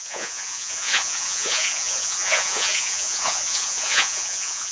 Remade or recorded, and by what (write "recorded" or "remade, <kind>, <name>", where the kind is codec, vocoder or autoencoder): remade, vocoder, Vocos